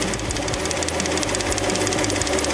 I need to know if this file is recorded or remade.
recorded